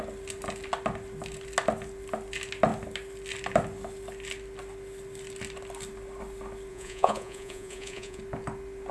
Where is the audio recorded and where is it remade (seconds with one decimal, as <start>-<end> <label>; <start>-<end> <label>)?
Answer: 0.0-6.7 recorded; 6.7-8.2 remade; 8.2-8.9 recorded